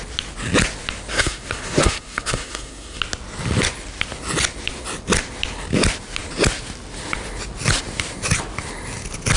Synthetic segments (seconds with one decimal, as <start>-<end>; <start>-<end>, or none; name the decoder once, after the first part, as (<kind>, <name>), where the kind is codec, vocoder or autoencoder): 1.1-3.0 (codec, SNAC)